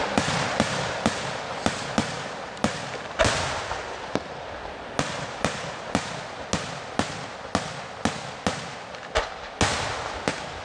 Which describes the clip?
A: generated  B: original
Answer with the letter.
B